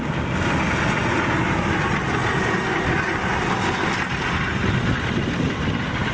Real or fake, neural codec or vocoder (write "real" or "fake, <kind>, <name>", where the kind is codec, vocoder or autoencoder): real